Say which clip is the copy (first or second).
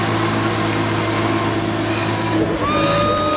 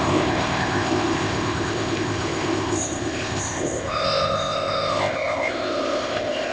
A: second